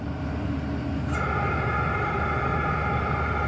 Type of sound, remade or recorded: recorded